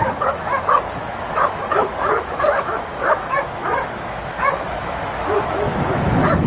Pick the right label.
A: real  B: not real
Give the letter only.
B